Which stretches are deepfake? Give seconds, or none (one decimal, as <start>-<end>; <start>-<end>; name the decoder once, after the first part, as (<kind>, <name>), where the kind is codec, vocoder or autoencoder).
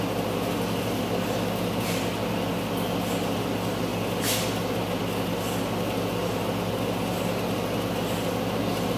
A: none